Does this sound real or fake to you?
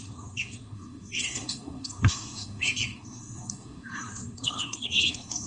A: fake